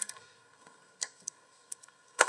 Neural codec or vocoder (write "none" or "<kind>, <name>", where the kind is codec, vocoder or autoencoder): codec, SNAC